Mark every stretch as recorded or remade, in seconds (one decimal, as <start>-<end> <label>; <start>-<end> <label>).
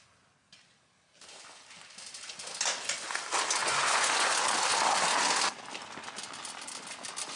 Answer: 0.0-3.6 recorded; 3.6-4.3 remade; 4.3-7.4 recorded